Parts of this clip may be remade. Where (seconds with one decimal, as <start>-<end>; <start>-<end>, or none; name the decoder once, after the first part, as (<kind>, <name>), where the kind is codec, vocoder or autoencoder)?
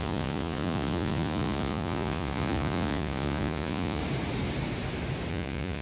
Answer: 0.0-4.0 (vocoder, Vocos); 5.3-5.8